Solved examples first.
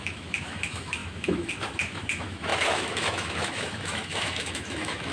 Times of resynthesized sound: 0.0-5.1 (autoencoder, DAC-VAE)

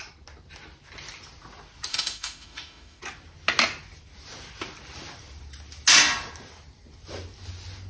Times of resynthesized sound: 1.9-3.0 (autoencoder, DAC-VAE)

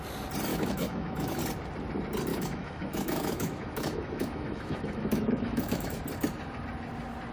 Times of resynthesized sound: 0.5-1.4 (autoencoder, DAC-VAE); 2.3-6.0

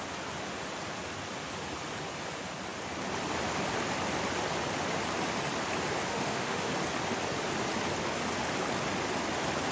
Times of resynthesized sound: 6.1-6.7 (autoencoder, DAC-VAE)

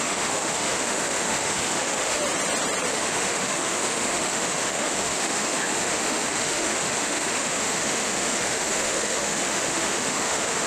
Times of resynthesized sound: 0.0-2.2 (autoencoder, DAC-VAE); 2.9-10.7

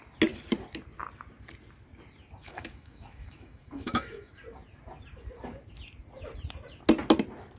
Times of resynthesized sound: 2.4-4.3 (autoencoder, DAC-VAE)